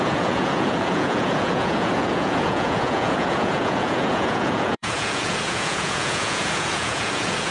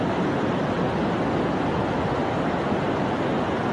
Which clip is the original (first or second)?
second